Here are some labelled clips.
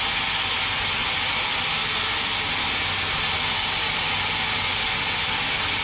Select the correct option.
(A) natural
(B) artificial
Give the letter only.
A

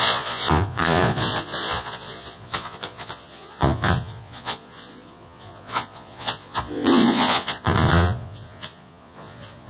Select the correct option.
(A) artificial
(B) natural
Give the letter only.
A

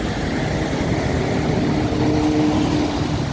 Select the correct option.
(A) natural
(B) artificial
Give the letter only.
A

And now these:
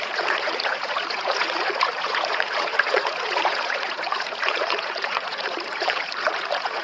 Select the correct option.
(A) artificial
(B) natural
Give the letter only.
A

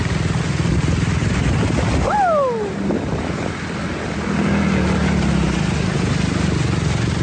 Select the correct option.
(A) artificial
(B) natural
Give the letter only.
B